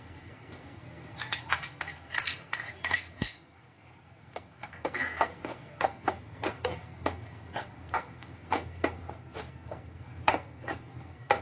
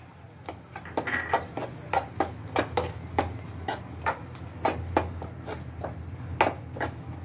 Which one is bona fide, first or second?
second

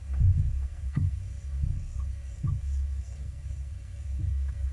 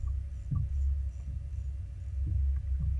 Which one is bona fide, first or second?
second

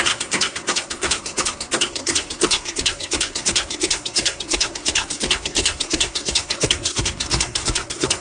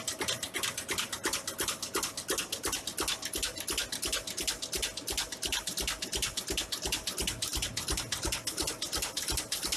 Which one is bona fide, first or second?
second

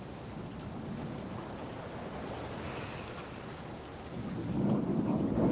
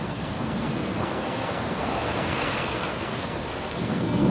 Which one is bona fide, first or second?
first